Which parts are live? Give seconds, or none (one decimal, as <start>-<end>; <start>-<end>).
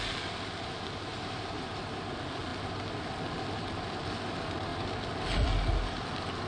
0.0-1.1; 1.8-6.5